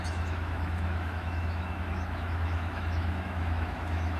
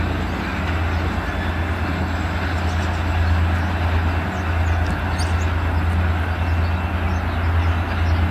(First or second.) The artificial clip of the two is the first